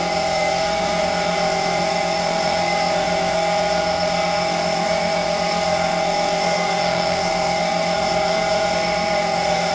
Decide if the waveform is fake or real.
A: fake